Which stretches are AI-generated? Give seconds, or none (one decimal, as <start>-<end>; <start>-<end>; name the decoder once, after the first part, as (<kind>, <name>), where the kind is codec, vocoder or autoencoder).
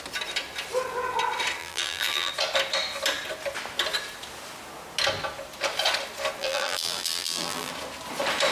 1.6-2.3 (vocoder, BigVGAN v2); 6.4-7.7